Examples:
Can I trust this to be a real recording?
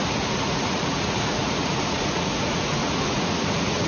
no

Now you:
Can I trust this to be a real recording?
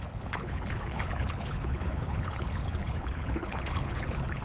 no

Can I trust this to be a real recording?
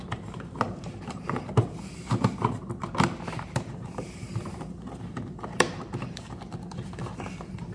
no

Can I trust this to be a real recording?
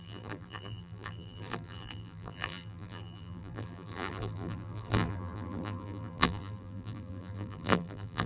no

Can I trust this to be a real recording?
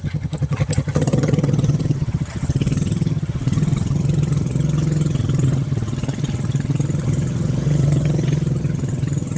no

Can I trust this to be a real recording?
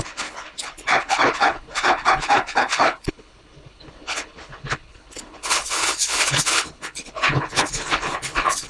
no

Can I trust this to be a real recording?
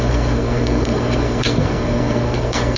no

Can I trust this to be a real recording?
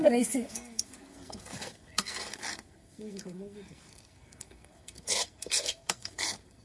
no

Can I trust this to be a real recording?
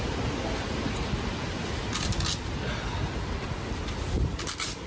yes